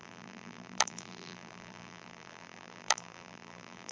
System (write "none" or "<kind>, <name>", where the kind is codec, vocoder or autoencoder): vocoder, BigVGAN v2